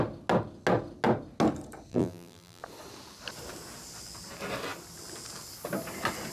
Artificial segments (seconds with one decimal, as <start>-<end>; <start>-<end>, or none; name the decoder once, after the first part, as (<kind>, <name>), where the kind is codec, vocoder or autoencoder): 1.9-2.6 (vocoder, BigVGAN v2)